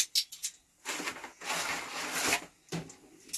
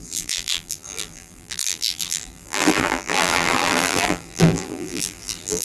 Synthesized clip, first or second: second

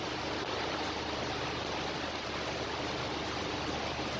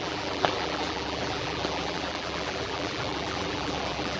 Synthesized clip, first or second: second